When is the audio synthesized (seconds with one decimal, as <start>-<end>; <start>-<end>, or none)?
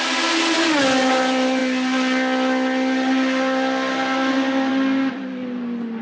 none